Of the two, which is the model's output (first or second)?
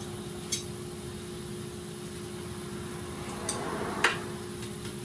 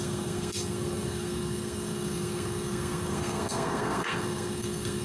second